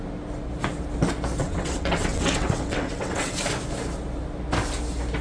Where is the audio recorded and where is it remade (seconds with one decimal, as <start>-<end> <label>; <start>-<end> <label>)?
0.0-1.4 recorded; 1.4-3.4 remade; 3.4-5.2 recorded